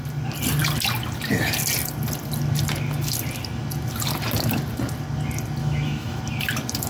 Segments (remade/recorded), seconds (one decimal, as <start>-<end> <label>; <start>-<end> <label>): 0.0-5.6 recorded; 5.6-6.2 remade; 6.2-6.9 recorded